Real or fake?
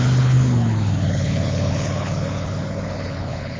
fake